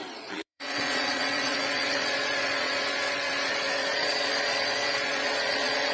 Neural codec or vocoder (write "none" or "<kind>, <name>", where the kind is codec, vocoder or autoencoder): vocoder, Vocos